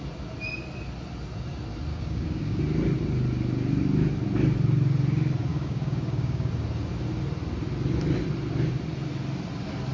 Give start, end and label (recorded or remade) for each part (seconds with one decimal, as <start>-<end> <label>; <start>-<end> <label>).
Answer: 0.0-1.9 recorded; 1.9-2.6 remade; 2.6-5.5 recorded; 5.5-6.5 remade; 6.5-9.9 recorded